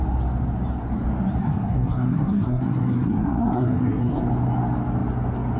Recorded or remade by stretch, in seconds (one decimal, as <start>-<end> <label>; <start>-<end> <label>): 0.0-1.4 recorded; 1.4-4.2 remade; 4.2-5.6 recorded